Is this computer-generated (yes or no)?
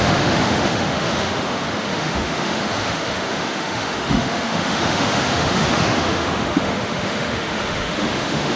yes